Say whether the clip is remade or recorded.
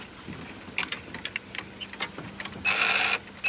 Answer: recorded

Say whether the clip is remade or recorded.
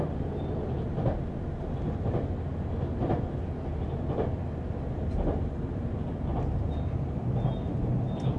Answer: recorded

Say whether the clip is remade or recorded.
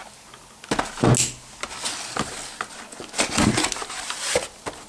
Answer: recorded